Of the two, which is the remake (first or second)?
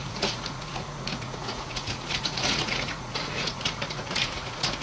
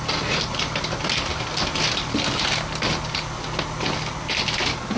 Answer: first